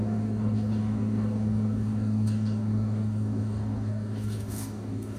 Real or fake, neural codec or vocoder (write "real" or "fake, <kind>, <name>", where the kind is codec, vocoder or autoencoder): fake, codec, DAC